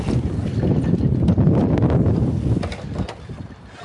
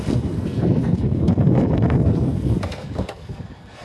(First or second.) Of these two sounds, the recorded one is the first